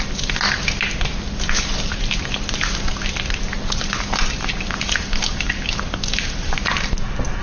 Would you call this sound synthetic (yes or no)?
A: no